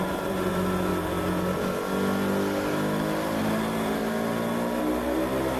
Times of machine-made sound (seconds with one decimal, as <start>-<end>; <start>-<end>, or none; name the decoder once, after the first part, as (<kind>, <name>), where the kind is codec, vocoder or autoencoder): 0.0-0.9 (vocoder, BigVGAN v2); 3.4-4.0; 4.8-5.6